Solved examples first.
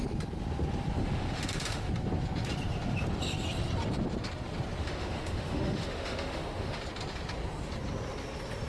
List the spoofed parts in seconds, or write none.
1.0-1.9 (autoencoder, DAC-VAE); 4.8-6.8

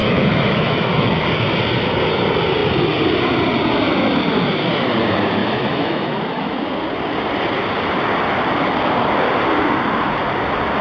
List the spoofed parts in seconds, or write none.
0.0-1.2 (autoencoder, DAC-VAE); 5.4-6.6

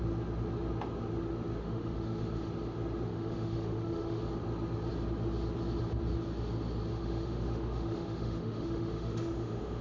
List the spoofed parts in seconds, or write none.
1.6-2.5 (autoencoder, DAC-VAE); 3.1-4.2; 6.9-9.8

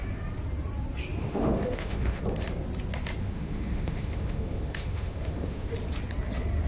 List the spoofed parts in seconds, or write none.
1.2-2.2 (autoencoder, DAC-VAE); 3.2-5.7

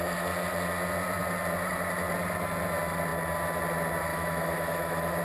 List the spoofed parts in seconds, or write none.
4.1-5.2 (autoencoder, DAC-VAE)